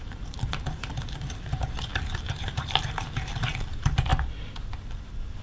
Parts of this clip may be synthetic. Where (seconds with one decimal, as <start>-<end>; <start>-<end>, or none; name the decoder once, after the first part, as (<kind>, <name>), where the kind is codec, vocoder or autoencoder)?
0.0-4.1 (vocoder, BigVGAN v2); 4.7-5.4